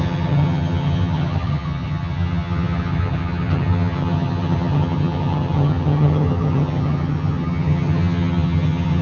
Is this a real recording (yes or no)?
no